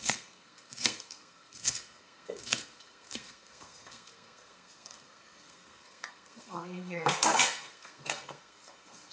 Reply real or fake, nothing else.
fake